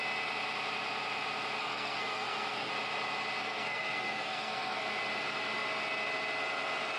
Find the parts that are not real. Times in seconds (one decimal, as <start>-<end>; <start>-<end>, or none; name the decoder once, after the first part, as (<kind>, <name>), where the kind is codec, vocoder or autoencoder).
1.6-2.7 (codec, SNAC); 3.4-4.8